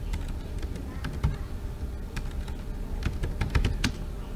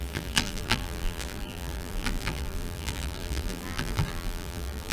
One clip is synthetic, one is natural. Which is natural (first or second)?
first